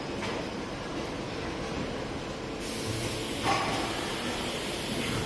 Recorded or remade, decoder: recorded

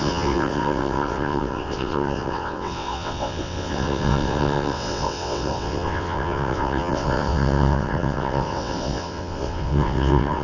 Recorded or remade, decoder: remade, vocoder, WaveNeXt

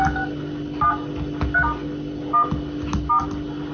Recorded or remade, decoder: recorded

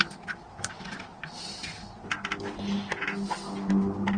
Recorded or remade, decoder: recorded